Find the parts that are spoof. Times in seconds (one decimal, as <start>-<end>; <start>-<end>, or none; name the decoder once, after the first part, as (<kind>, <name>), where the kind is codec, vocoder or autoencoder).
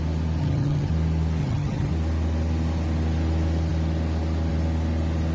0.4-0.9 (vocoder, HiFi-GAN); 1.4-1.9